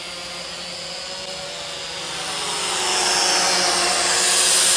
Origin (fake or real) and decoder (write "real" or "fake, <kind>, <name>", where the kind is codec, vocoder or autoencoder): real